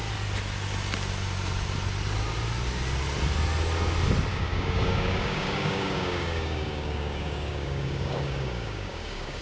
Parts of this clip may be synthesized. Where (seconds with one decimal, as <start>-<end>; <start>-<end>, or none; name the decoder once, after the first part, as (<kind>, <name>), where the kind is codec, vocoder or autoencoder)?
4.3-9.4 (codec, DAC)